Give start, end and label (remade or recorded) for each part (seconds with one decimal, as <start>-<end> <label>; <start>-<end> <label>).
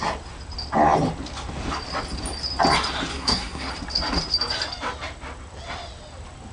0.0-3.1 recorded; 3.1-3.7 remade; 3.7-6.5 recorded